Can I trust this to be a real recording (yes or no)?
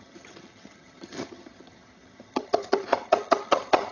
no